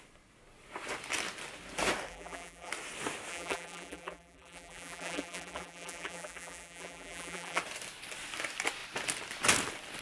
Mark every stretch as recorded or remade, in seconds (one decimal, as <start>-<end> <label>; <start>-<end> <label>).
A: 0.0-2.1 recorded; 2.1-2.7 remade; 2.7-3.3 recorded; 3.3-7.6 remade; 7.6-10.0 recorded